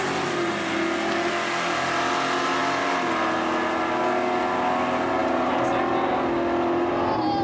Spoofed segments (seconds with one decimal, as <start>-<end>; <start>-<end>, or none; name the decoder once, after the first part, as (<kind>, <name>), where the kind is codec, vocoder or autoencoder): none